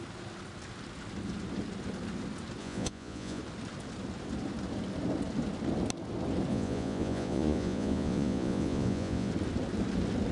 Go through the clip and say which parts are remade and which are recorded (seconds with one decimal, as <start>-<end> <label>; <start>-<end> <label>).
0.0-2.6 recorded; 2.6-3.4 remade; 3.4-6.5 recorded; 6.5-9.3 remade; 9.3-10.3 recorded